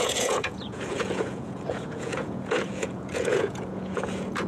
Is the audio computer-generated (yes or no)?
yes